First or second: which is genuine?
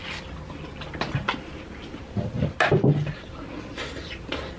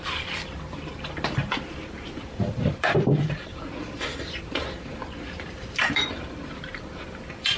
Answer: first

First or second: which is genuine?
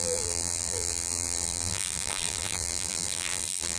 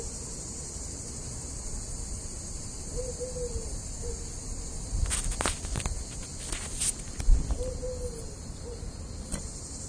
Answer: second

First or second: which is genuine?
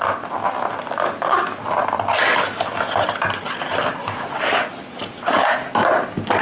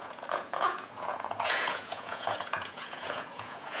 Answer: first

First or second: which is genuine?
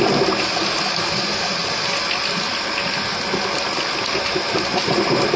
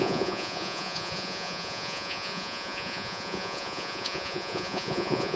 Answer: first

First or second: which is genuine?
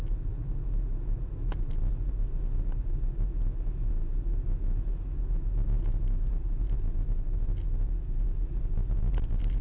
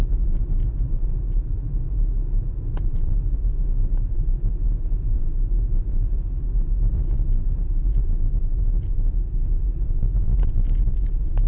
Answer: first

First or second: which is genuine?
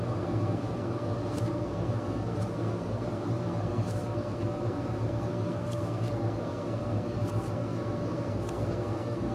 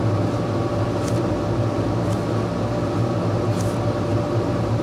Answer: second